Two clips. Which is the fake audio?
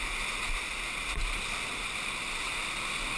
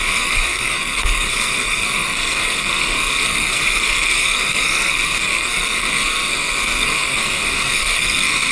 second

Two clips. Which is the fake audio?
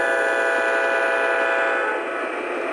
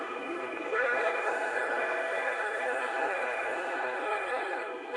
second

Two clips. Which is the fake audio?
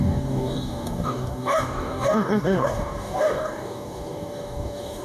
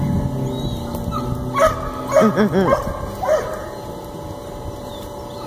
first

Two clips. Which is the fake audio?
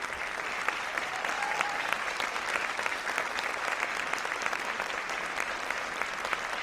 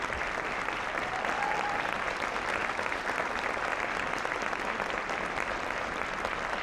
second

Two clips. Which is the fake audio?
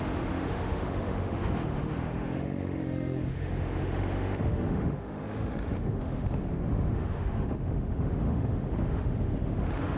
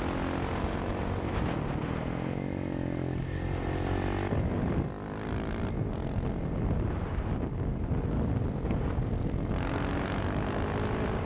first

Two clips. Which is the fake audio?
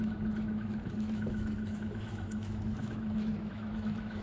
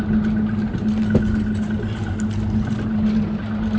first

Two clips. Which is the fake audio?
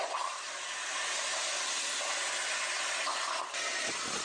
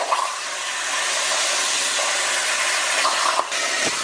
second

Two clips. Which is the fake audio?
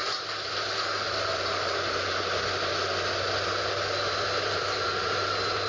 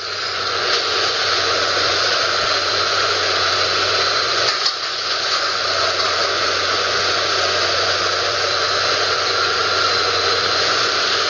second